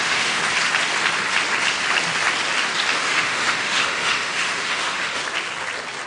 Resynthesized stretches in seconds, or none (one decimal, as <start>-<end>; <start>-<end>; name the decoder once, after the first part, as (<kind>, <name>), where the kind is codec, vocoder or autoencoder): 0.0-0.4 (autoencoder, DAC-VAE); 2.9-5.2